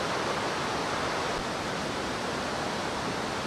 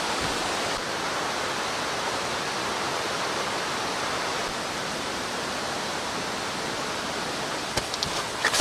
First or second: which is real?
first